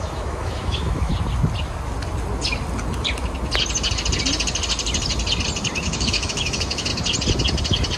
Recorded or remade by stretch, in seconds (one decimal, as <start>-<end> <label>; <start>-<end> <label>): 0.0-1.1 remade; 1.1-5.8 recorded; 5.8-6.9 remade; 6.9-8.0 recorded